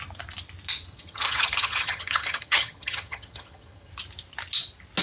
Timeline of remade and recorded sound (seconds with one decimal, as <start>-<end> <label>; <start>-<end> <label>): 0.0-0.9 recorded; 0.9-3.9 remade; 3.9-5.0 recorded